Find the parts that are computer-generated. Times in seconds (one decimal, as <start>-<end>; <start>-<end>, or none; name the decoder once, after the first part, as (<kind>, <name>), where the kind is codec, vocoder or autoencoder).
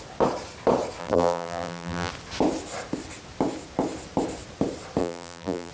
1.0-2.1 (vocoder, BigVGAN v2); 5.0-5.7